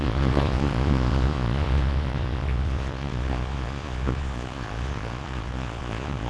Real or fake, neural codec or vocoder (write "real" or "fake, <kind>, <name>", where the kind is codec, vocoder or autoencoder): fake, vocoder, Vocos